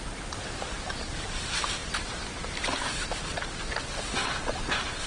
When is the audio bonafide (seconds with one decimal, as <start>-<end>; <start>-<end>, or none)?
none